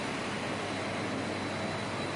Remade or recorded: recorded